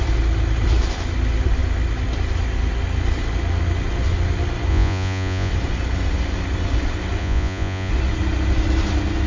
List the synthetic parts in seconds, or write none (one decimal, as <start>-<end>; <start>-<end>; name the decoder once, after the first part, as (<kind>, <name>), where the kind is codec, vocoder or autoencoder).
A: 4.7-5.5 (vocoder, Vocos); 7.2-7.9